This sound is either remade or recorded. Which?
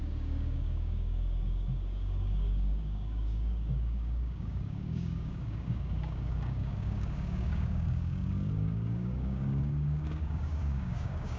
remade